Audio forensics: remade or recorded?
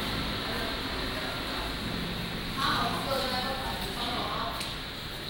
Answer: recorded